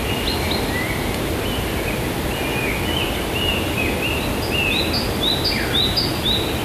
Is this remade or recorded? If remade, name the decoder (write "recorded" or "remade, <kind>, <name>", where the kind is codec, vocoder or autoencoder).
recorded